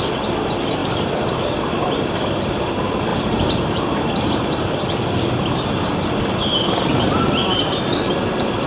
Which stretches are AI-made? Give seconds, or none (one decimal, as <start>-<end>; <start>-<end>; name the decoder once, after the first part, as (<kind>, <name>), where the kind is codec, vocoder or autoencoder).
0.8-2.6 (vocoder, BigVGAN v2); 3.1-4.8; 6.9-7.6